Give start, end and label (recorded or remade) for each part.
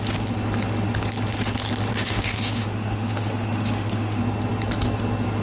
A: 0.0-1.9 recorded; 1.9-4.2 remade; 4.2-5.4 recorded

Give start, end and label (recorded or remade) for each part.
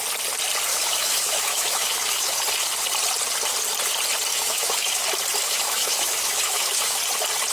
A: 0.0-0.7 recorded; 0.7-2.4 remade; 2.4-4.3 recorded; 4.3-5.0 remade; 5.0-5.4 recorded; 5.4-7.0 remade; 7.0-7.5 recorded